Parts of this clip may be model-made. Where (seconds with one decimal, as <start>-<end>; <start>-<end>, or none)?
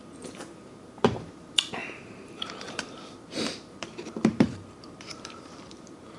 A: 0.0-6.2